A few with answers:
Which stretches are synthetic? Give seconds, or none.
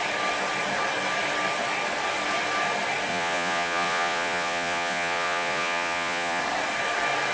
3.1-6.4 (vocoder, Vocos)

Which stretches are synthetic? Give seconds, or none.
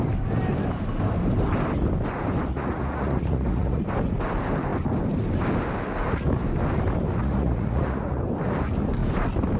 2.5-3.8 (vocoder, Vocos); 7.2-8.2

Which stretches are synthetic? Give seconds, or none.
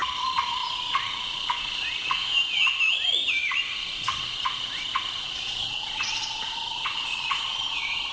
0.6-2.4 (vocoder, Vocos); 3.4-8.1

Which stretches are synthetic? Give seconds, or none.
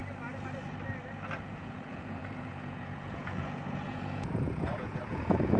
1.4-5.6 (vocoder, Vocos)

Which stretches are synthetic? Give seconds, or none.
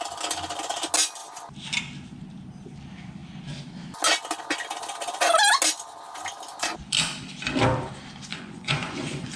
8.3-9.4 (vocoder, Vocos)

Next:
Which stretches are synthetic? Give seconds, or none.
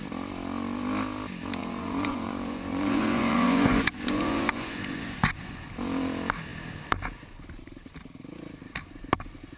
1.6-5.7 (vocoder, Vocos)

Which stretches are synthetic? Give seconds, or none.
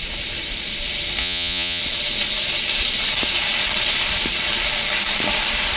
1.2-1.8 (vocoder, Vocos)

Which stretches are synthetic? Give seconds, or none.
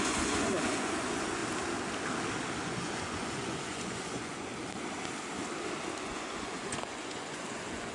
0.0-1.4 (vocoder, Vocos); 2.6-4.5; 6.0-7.9